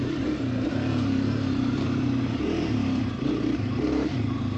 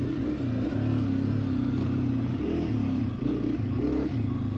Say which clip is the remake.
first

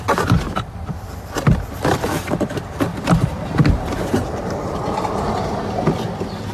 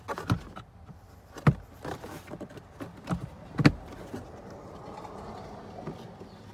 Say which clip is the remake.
first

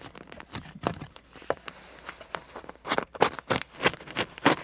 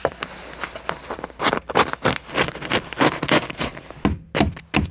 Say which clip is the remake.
first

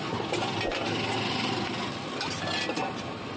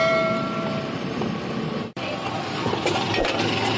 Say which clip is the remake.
second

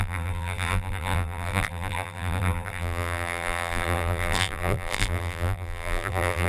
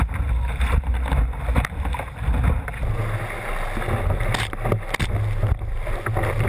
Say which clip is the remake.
first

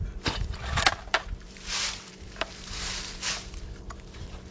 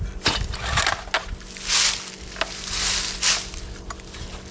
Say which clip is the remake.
first